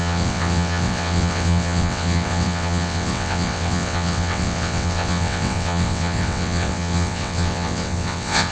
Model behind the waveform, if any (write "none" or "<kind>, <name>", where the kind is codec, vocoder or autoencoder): vocoder, WaveNeXt